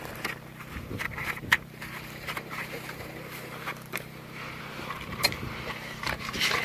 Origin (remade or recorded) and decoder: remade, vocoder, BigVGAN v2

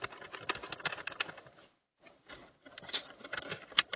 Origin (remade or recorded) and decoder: recorded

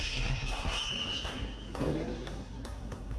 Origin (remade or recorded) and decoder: remade, codec, SNAC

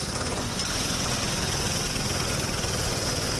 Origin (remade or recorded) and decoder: remade, vocoder, Vocos